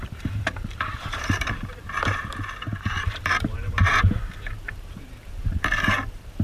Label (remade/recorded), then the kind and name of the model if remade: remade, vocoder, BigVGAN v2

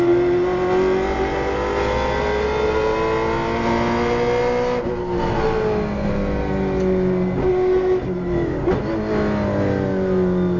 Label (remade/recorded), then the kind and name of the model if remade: recorded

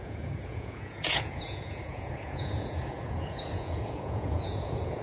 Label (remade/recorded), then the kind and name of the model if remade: remade, vocoder, Vocos